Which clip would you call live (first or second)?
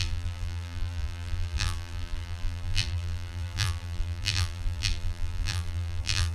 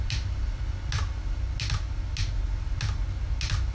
second